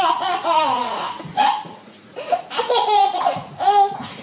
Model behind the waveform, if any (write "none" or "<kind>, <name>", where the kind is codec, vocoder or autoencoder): vocoder, Vocos